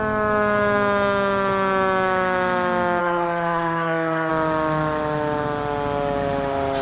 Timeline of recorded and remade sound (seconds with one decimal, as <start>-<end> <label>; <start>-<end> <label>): 0.0-3.0 recorded; 3.0-4.3 remade; 4.3-6.8 recorded